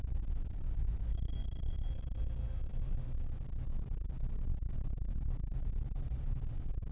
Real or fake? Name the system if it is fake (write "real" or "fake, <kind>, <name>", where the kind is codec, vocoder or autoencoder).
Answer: real